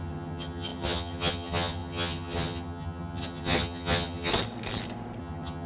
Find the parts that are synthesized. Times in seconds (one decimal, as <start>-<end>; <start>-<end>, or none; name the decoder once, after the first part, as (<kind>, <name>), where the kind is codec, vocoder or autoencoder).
0.0-4.3 (vocoder, HiFi-GAN); 5.2-5.7